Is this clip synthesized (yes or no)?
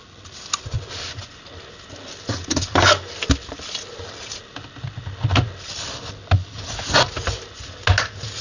no